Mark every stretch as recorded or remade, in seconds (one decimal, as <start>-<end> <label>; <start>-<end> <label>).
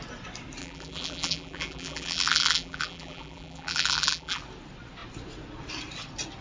0.0-0.6 recorded; 0.6-4.4 remade; 4.4-6.4 recorded